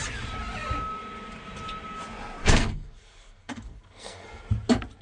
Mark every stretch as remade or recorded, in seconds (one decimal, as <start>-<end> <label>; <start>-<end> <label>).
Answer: 0.0-2.4 recorded; 2.4-4.4 remade; 4.4-5.0 recorded